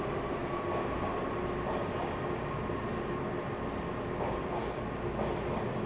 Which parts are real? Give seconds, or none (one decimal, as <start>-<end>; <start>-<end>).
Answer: 0.0-5.9